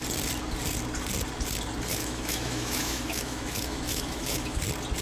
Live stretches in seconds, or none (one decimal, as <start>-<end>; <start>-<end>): 0.0-1.9; 4.6-5.0